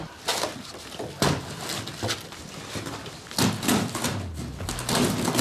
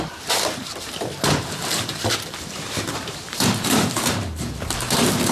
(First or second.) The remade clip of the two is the second